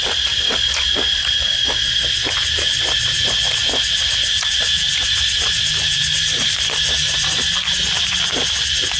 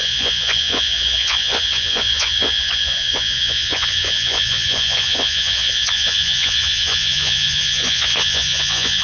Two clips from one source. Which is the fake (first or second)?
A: second